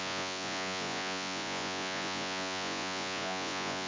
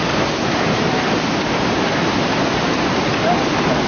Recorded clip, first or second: second